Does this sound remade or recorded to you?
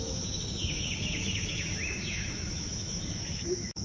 remade